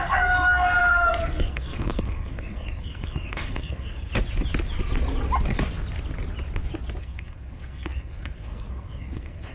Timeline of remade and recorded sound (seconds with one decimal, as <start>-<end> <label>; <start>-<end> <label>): 0.0-4.1 remade; 4.1-7.0 recorded; 7.0-9.5 remade